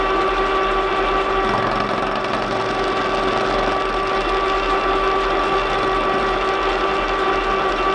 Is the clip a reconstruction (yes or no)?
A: no